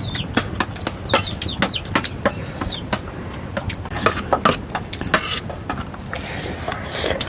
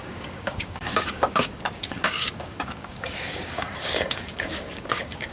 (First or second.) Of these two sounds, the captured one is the first